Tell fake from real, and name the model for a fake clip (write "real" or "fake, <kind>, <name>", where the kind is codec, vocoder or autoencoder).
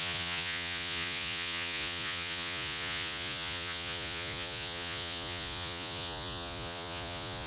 fake, vocoder, Vocos